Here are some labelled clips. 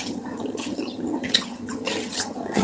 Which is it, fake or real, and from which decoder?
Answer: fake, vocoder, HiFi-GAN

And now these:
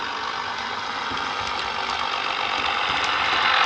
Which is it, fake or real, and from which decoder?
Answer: real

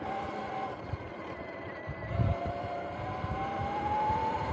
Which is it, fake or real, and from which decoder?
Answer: real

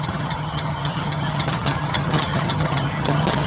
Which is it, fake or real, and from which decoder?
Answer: fake, vocoder, HiFi-GAN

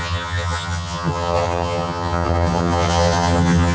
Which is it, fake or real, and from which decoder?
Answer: fake, vocoder, HiFi-GAN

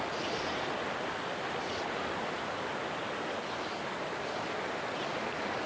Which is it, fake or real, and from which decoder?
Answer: real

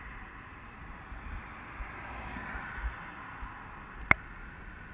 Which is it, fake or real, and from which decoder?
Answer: real